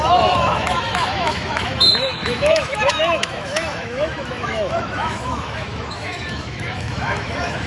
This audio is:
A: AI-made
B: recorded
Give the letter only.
A